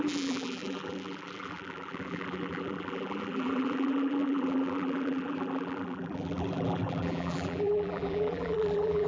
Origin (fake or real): fake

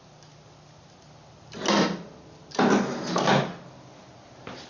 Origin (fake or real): real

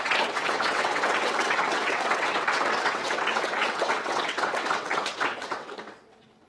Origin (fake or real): fake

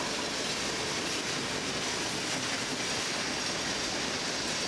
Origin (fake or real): real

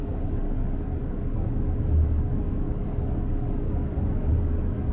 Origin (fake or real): fake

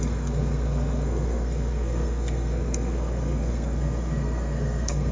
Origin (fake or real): fake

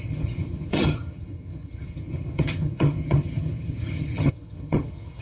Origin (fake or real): fake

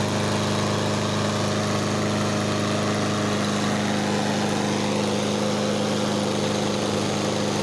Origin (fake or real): real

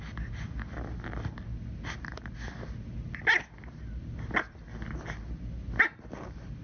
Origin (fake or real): real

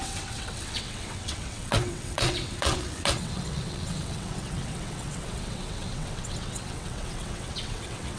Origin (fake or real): fake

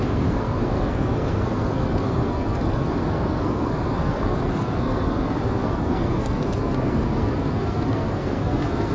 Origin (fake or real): fake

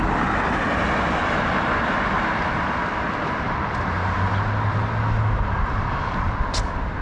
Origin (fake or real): real